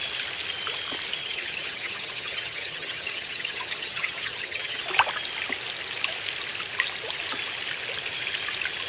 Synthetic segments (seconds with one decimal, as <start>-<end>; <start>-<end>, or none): 1.2-4.8